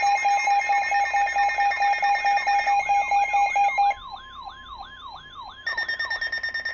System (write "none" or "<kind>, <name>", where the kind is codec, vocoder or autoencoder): none